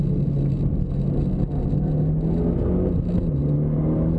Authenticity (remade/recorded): recorded